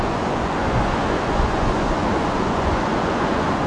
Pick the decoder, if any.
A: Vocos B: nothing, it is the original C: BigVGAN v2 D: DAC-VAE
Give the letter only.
A